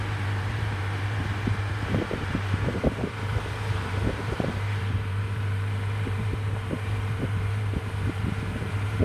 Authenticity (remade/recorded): remade